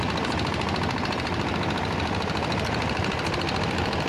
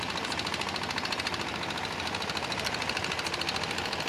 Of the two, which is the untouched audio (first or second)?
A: second